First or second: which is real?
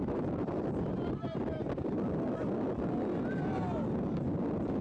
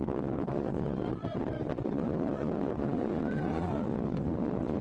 first